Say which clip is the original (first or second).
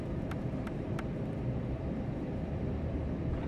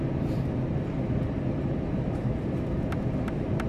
second